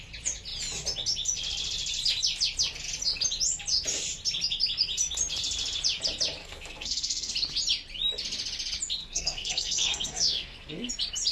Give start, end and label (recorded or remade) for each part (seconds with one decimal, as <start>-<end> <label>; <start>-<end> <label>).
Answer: 0.0-6.4 recorded; 6.4-7.3 remade; 7.3-9.0 recorded; 9.0-10.9 remade; 10.9-11.3 recorded